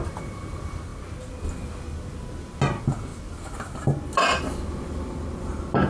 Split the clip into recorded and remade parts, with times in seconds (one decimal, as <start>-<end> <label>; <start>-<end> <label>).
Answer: 0.0-5.9 recorded